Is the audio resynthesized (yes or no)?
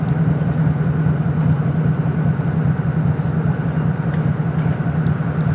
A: no